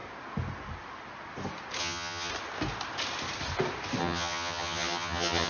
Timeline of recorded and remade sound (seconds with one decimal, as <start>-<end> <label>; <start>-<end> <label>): 0.0-1.8 recorded; 1.8-2.3 remade; 2.3-4.0 recorded; 4.0-5.5 remade